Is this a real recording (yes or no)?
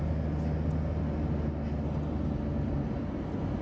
yes